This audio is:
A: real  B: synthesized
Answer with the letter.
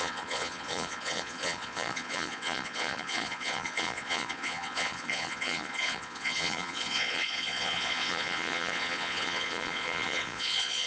B